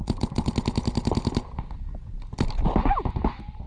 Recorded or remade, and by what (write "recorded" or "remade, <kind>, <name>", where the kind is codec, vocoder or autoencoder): recorded